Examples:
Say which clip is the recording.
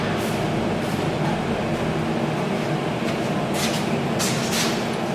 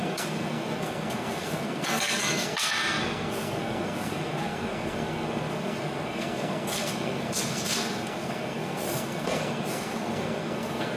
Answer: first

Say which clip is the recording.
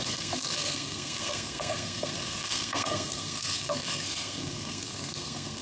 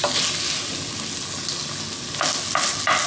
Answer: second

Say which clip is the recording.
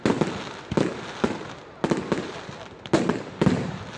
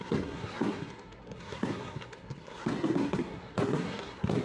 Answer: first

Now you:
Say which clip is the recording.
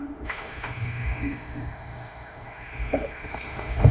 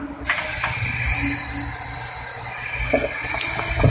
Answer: second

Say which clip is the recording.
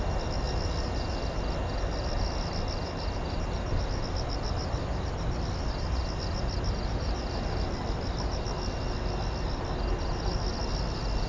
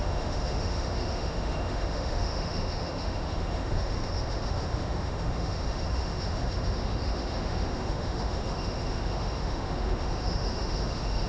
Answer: first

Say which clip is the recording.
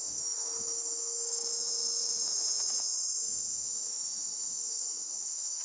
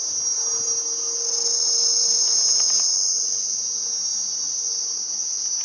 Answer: second